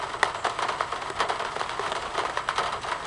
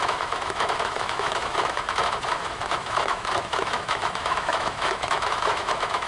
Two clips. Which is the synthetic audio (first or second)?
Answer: second